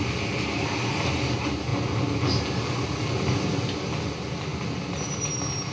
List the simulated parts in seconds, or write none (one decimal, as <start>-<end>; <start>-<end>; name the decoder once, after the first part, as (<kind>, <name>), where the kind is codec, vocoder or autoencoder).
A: none